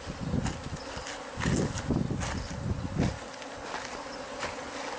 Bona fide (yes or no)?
yes